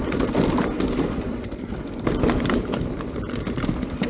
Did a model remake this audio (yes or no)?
no